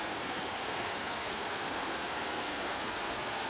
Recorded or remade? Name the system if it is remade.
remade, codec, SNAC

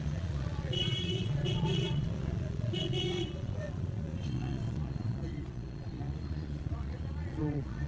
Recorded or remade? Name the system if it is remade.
remade, vocoder, Vocos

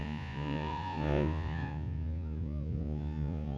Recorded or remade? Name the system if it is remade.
remade, vocoder, Vocos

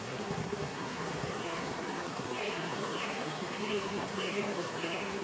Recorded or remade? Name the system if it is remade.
remade, codec, SNAC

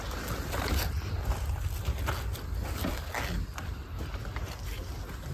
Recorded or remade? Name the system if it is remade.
recorded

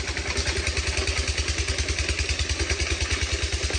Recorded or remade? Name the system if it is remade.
recorded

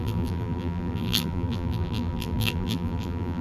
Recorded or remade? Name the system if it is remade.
remade, vocoder, BigVGAN v2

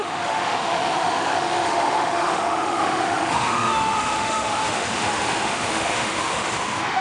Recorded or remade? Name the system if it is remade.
remade, autoencoder, DAC-VAE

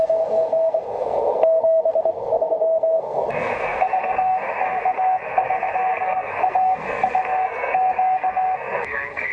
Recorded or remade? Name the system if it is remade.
remade, codec, SNAC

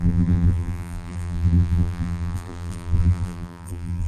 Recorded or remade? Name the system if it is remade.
remade, vocoder, BigVGAN v2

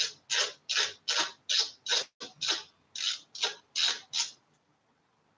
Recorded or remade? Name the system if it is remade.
recorded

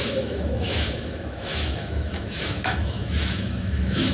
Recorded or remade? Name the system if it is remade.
remade, autoencoder, DAC-VAE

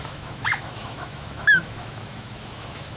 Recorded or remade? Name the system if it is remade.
remade, autoencoder, DAC-VAE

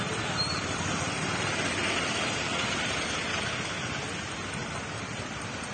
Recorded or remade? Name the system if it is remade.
recorded